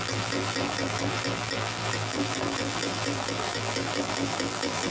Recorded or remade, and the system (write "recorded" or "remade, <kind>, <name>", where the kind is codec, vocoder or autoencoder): remade, vocoder, BigVGAN v2